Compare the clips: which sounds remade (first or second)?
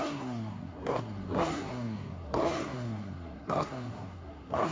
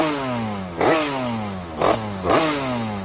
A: first